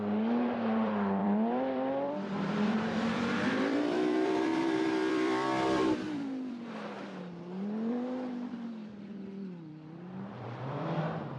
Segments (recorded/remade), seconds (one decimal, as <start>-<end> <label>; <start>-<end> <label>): 0.0-11.4 remade